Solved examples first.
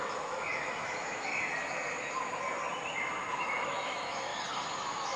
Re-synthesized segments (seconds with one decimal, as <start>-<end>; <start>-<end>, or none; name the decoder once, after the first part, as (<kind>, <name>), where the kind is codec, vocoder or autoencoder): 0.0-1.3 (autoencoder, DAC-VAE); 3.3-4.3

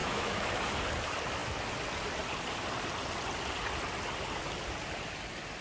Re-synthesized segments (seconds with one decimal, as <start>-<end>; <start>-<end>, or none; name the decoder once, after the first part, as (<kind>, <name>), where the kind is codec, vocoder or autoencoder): 0.0-0.7 (autoencoder, DAC-VAE)

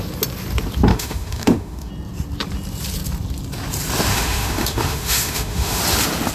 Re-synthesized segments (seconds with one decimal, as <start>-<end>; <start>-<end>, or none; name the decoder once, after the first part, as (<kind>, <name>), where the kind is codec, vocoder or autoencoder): 0.9-1.9 (autoencoder, DAC-VAE); 4.1-5.8